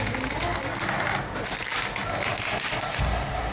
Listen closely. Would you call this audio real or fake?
real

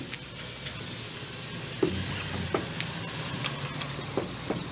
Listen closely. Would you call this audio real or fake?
real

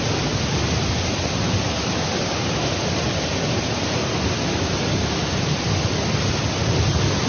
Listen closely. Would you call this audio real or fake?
real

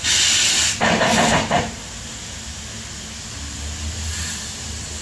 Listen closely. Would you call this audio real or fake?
real